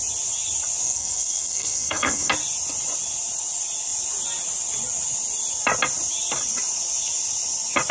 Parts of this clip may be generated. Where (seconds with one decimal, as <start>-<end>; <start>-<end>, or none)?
0.8-2.3